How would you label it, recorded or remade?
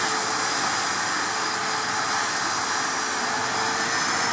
recorded